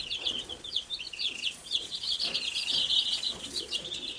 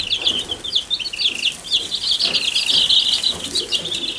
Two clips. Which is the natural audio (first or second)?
second